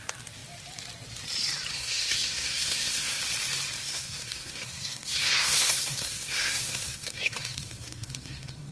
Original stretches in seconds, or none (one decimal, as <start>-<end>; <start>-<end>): 0.0-1.7; 3.2-3.8